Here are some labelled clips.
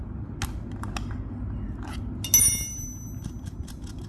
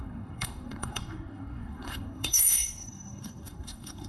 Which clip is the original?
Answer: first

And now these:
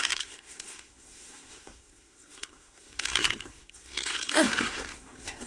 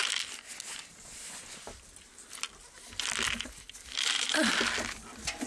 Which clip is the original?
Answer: second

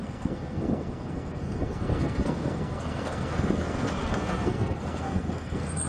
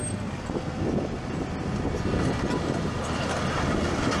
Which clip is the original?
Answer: second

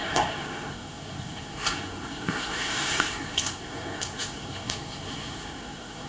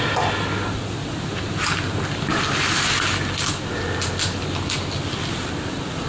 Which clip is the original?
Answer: second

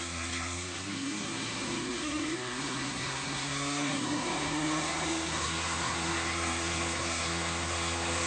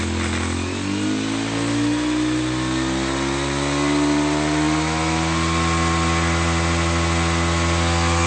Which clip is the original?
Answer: second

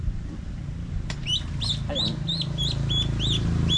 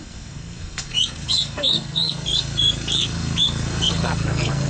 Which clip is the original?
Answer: first